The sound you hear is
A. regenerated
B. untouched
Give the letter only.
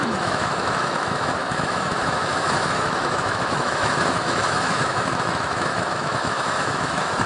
A